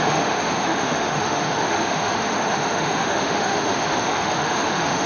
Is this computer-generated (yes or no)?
yes